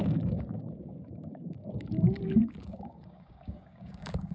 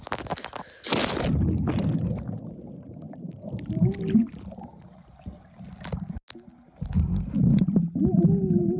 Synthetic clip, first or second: first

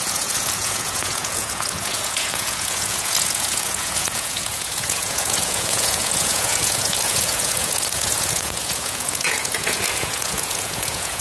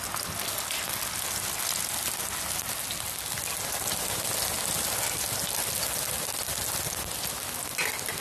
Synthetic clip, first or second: first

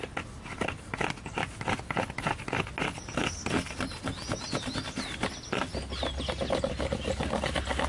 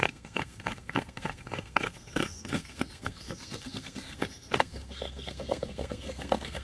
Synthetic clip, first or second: second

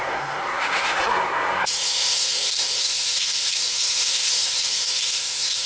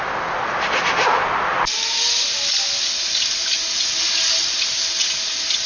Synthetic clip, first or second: first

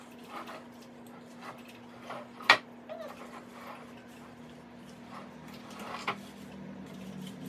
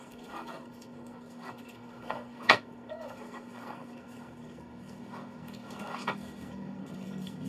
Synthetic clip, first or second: second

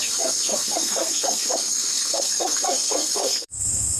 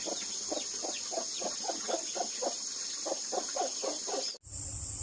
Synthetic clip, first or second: first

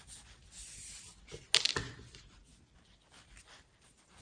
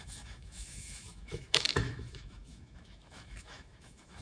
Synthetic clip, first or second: second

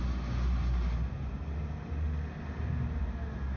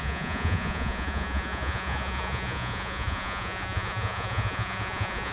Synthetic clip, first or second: second